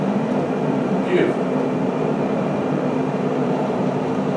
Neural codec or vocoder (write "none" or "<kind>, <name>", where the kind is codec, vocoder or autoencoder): vocoder, BigVGAN v2